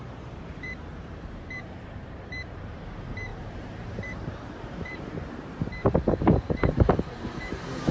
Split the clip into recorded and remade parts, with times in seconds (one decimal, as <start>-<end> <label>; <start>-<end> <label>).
0.0-7.9 remade